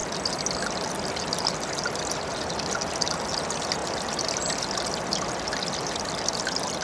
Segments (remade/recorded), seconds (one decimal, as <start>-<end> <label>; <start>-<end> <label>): 0.0-6.8 recorded